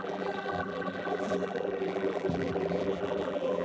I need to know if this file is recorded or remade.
remade